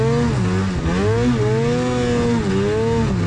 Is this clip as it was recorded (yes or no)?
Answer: yes